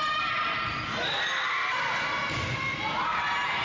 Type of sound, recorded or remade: remade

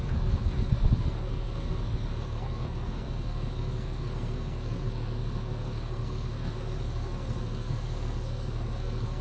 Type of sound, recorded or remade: remade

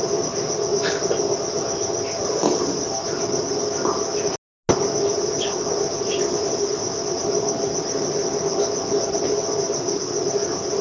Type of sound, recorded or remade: recorded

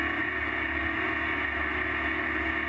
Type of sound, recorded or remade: recorded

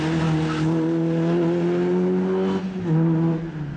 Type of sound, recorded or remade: recorded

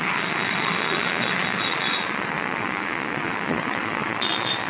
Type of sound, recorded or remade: remade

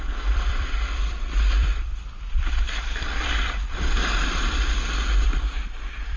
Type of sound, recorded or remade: remade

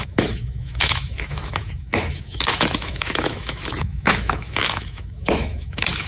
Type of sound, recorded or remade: remade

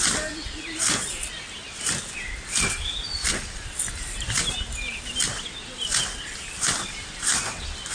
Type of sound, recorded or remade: recorded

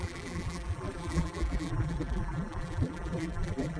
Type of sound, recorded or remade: remade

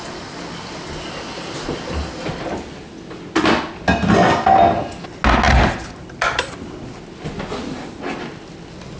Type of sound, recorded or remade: recorded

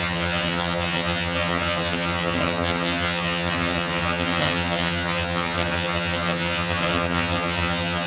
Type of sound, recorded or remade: remade